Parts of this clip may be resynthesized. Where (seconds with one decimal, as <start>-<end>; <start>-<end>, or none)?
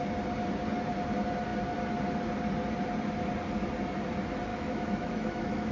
4.5-5.7